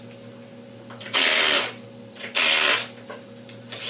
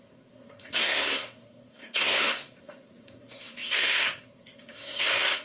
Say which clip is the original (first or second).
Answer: first